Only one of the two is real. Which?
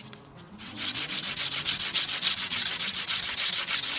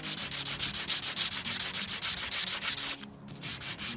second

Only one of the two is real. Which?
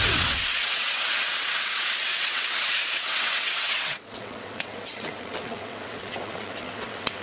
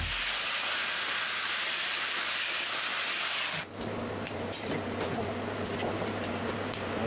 second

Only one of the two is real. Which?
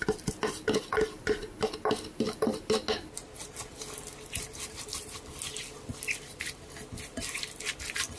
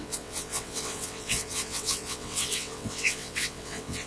first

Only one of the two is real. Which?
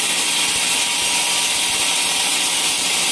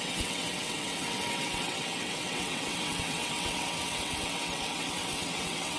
first